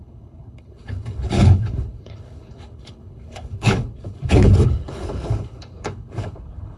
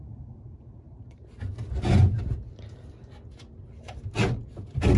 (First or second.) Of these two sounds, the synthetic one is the first